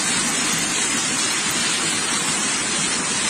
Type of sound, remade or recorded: recorded